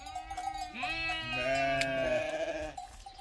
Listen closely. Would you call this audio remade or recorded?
recorded